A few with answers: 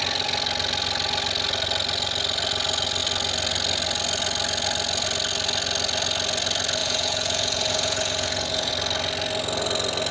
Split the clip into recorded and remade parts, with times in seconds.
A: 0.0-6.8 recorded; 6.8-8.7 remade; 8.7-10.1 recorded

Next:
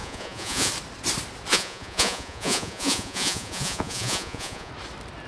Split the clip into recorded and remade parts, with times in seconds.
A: 0.0-0.7 remade; 0.7-1.5 recorded; 1.5-4.7 remade; 4.7-5.3 recorded

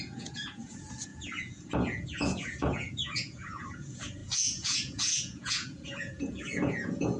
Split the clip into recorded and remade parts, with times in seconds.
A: 0.0-7.2 remade

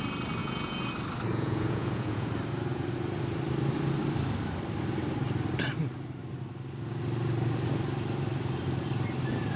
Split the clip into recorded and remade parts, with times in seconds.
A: 0.0-0.4 recorded; 0.4-0.9 remade; 0.9-1.3 recorded; 1.3-2.3 remade; 2.3-9.6 recorded

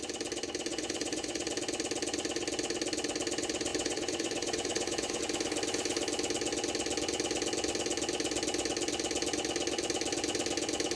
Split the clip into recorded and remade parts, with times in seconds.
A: 0.0-0.7 recorded; 0.7-1.5 remade; 1.5-3.7 recorded; 3.7-5.2 remade; 5.2-11.0 recorded